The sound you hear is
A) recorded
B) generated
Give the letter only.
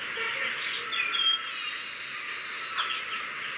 A